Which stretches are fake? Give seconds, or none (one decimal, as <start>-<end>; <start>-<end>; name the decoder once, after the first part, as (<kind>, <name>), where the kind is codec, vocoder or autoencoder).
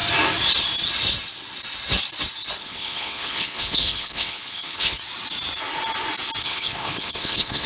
2.6-5.0 (codec, HILCodec); 6.4-7.7